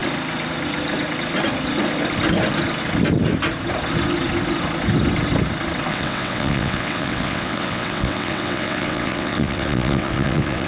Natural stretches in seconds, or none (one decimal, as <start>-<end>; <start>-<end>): 0.0-5.9